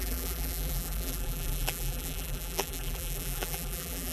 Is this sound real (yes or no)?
no